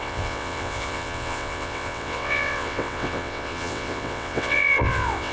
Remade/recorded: remade